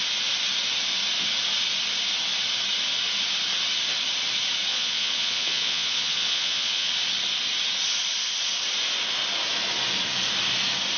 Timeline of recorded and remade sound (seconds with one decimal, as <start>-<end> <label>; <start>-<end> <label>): 0.0-4.7 recorded; 4.7-6.9 remade; 6.9-11.0 recorded